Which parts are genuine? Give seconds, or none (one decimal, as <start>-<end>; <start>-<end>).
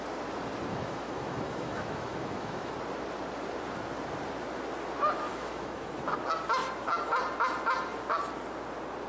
0.0-0.7; 2.7-5.3; 5.9-9.1